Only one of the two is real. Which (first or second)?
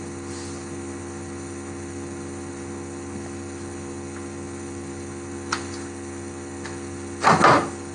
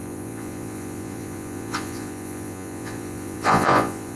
first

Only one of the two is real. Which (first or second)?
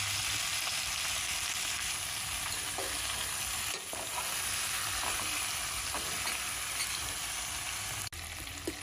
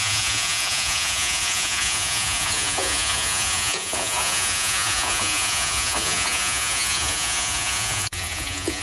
first